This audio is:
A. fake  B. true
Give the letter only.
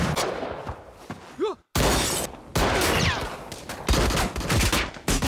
B